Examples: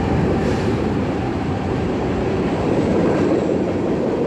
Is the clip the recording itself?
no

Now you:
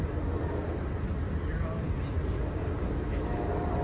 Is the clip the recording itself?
yes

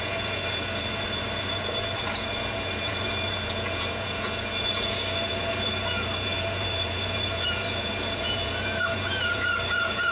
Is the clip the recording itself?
no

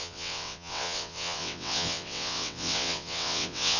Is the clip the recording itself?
no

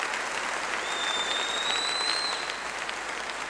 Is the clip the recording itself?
yes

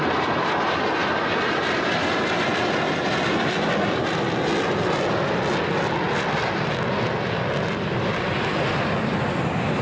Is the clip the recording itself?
yes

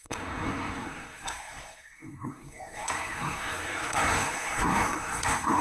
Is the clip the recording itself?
no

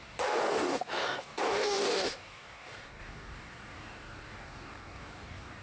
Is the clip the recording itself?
no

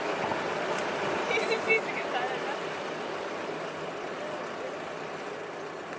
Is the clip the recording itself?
yes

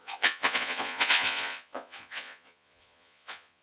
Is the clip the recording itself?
no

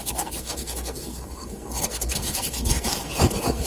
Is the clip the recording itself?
no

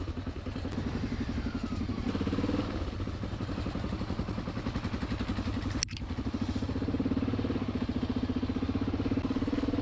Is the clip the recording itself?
yes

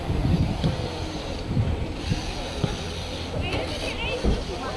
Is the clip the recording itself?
yes